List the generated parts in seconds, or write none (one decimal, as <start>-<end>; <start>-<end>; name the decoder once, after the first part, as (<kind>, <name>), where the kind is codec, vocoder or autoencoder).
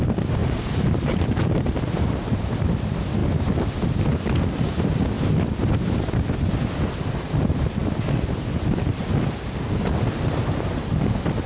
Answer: 0.4-2.5 (vocoder, BigVGAN v2)